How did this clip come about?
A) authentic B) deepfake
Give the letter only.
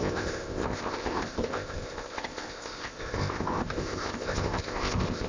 B